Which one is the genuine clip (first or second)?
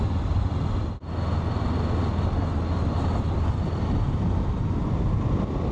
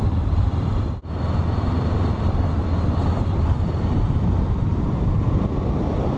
first